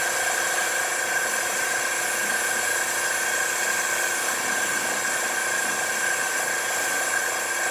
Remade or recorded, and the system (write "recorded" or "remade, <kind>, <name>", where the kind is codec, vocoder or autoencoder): recorded